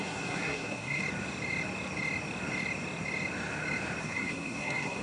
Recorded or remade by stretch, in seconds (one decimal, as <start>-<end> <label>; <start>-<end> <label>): 0.0-1.0 remade; 1.0-4.0 recorded; 4.0-5.0 remade